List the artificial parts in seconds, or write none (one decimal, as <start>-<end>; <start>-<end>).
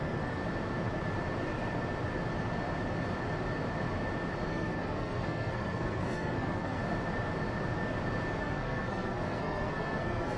0.0-0.4; 4.5-6.8; 8.4-10.4